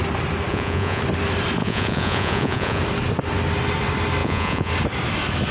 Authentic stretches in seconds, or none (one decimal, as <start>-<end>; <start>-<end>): 0.0-0.5; 1.0-1.6; 2.8-4.2; 4.7-5.5